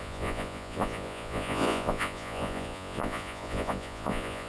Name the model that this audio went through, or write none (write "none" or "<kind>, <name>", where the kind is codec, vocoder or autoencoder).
vocoder, Vocos